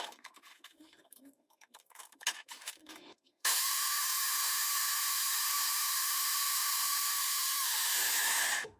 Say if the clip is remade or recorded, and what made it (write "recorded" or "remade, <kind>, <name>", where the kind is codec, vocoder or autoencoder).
remade, autoencoder, DAC-VAE